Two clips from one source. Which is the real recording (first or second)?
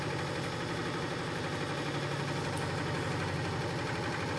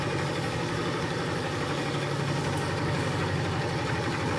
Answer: first